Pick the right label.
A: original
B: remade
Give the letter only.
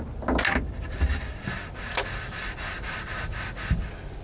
A